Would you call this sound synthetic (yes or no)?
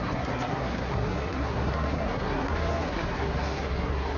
yes